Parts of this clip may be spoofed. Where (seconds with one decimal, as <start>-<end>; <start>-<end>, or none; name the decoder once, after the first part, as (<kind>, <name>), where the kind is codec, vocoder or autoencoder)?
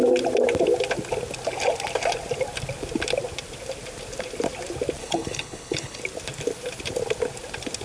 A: 5.0-6.0 (codec, HILCodec)